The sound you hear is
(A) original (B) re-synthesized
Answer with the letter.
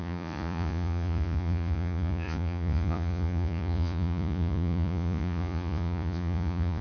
B